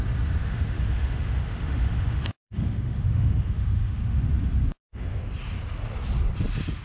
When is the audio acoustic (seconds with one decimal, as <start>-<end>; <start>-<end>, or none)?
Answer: 0.0-0.4; 4.2-4.7; 5.2-6.8